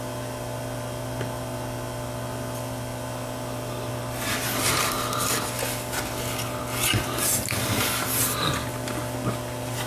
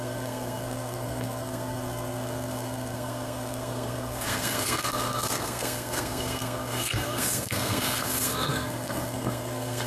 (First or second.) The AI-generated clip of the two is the second